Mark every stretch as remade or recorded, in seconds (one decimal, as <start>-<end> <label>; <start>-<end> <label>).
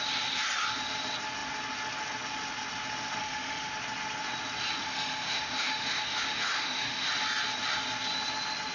0.0-3.2 recorded; 3.2-3.7 remade; 3.7-4.8 recorded; 4.8-7.1 remade; 7.1-8.7 recorded